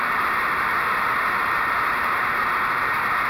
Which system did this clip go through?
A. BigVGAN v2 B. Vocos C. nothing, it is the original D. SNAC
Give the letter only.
A